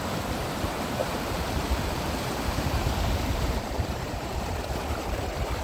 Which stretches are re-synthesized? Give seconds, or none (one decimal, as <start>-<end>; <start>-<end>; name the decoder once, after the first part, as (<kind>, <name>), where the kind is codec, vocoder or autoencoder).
1.0-4.4 (vocoder, BigVGAN v2)